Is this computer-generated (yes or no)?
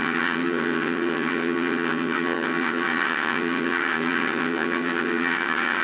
yes